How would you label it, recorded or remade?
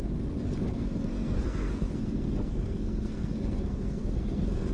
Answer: remade